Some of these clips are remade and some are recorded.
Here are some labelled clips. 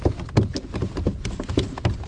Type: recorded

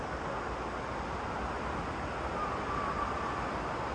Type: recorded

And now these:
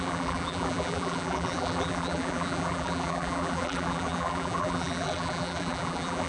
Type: remade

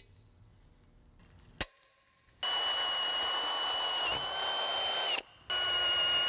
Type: recorded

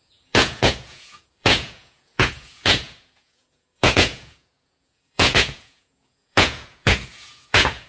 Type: remade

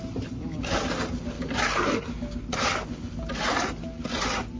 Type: recorded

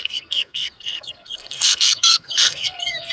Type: remade